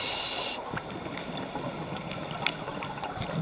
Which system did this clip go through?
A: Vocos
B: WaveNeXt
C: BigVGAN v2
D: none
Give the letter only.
D